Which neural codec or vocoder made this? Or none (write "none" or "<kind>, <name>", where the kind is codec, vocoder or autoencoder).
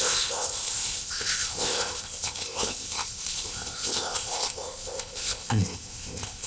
codec, ZipCodec